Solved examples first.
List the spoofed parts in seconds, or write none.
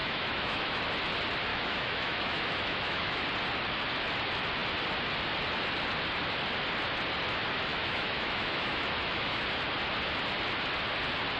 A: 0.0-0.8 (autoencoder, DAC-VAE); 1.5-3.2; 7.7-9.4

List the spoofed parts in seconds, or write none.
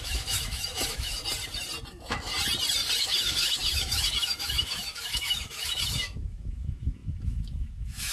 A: 0.0-1.2 (autoencoder, DAC-VAE); 1.9-2.3; 3.0-8.1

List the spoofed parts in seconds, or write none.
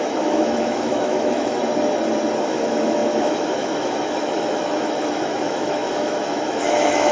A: 0.0-1.6 (autoencoder, DAC-VAE); 2.4-7.1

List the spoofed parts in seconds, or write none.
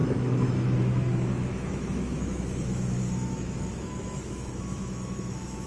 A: 0.0-5.7 (autoencoder, DAC-VAE)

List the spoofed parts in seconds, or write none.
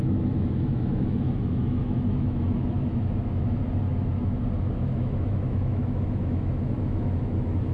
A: 0.0-3.6 (autoencoder, DAC-VAE); 4.7-7.7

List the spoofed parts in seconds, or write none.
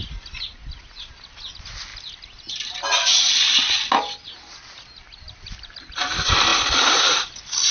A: none